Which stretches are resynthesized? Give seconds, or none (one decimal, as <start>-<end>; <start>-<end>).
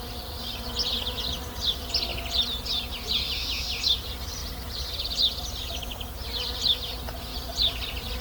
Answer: 7.3-8.2